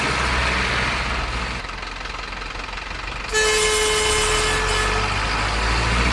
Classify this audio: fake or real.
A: real